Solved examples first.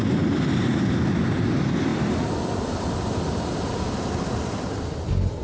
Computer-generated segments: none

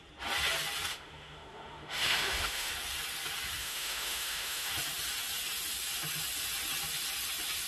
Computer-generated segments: 0.9-2.7 (autoencoder, DAC-VAE); 3.6-4.7